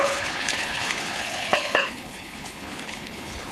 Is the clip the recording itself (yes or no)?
no